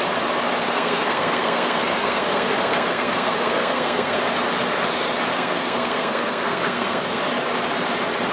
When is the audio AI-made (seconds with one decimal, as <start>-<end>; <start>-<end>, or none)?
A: 0.6-4.2; 5.3-7.2